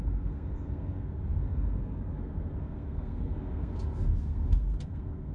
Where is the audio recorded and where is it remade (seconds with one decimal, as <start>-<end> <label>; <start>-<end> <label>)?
0.0-5.3 remade